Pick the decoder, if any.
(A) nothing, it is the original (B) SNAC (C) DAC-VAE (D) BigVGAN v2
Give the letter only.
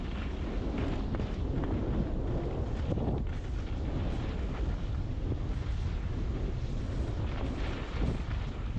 A